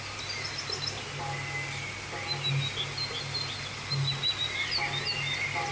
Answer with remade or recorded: recorded